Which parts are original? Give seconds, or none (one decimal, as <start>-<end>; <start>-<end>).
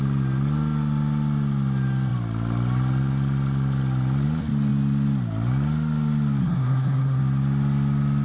0.0-6.4; 7.2-8.2